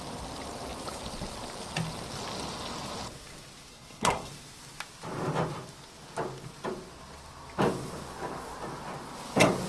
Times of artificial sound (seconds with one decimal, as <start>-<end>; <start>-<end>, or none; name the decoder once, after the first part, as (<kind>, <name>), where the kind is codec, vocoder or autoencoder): 3.7-4.3 (codec, SNAC)

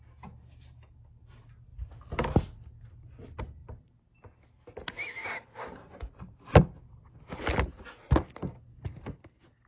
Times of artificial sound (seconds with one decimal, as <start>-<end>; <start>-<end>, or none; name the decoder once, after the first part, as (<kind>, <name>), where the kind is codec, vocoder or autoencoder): none